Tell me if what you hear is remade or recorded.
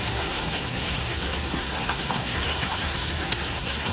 remade